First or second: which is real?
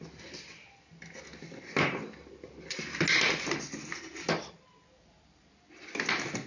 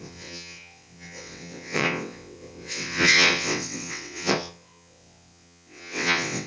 first